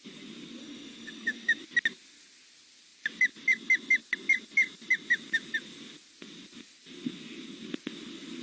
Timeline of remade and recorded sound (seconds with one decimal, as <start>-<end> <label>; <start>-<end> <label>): 0.0-0.6 recorded; 0.6-1.6 remade; 1.6-8.4 recorded